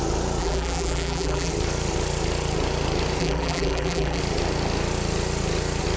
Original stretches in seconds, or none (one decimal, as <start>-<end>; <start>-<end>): 0.0-0.4; 1.5-3.2; 4.2-6.0